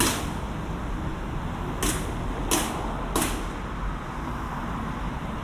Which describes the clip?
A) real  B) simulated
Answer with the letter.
A